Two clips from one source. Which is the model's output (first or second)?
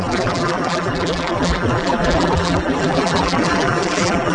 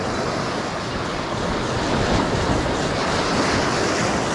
first